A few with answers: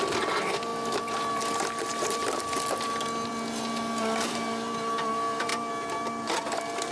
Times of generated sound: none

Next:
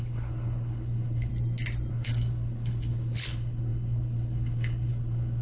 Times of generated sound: 0.0-1.3; 1.9-5.4